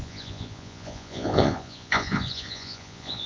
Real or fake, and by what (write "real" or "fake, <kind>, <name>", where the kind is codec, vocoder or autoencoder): fake, vocoder, Vocos